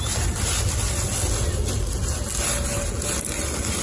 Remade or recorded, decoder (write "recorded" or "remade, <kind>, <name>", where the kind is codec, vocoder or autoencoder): recorded